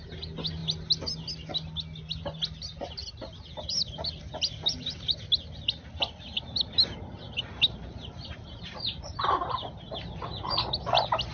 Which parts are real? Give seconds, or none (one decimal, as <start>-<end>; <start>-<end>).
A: 0.0-3.0; 5.1-7.8; 10.1-11.3